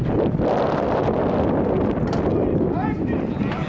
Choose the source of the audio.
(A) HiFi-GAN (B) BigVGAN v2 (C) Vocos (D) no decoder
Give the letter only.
D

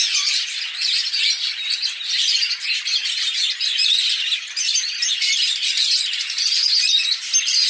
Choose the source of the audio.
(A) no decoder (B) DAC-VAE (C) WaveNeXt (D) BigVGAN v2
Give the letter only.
A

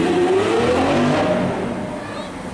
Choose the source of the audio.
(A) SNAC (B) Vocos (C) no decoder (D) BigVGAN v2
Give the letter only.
C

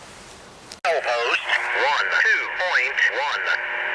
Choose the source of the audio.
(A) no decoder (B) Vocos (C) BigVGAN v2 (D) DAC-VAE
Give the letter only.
A